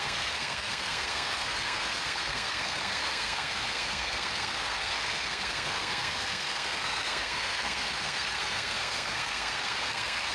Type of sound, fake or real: fake